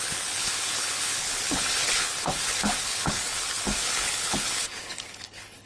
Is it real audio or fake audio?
fake